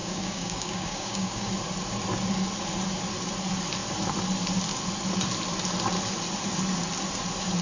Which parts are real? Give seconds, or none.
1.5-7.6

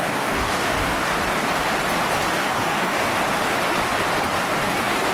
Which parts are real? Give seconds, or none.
1.1-2.3; 3.1-4.6

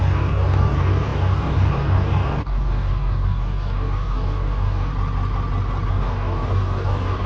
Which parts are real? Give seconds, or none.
4.9-5.9

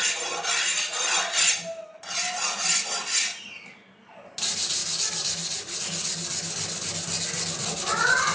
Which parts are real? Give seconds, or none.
0.0-8.3

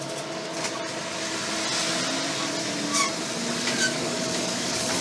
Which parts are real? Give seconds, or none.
0.5-3.5

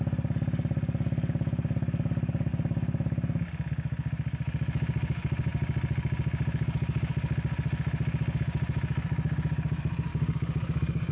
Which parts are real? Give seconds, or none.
0.0-10.1

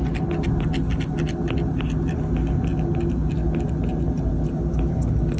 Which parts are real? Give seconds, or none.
0.0-5.4